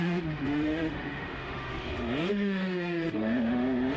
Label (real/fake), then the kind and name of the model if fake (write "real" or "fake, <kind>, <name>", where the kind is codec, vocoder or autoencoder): fake, autoencoder, DAC-VAE